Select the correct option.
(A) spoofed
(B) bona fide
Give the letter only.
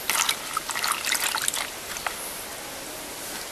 B